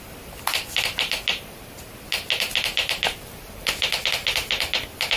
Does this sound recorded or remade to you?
recorded